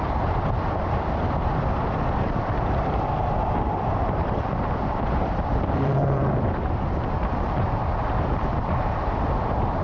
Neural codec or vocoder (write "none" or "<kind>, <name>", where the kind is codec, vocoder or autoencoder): vocoder, BigVGAN v2